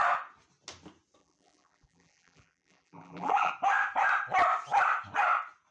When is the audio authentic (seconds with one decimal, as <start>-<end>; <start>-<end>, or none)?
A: 0.0-1.2; 3.5-5.7